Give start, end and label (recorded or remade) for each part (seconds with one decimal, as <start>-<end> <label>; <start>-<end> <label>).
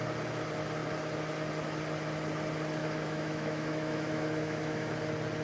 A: 0.0-2.8 recorded; 2.8-4.9 remade; 4.9-5.4 recorded